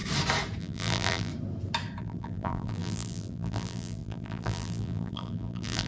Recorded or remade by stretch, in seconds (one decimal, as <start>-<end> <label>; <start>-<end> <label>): 0.0-0.6 recorded; 0.6-1.3 remade; 1.3-2.0 recorded; 2.0-5.9 remade